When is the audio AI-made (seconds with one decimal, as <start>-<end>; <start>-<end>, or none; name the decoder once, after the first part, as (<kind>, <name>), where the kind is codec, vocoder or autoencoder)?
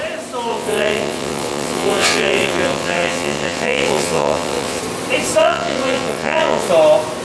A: 0.5-4.8 (vocoder, WaveNeXt); 5.4-6.7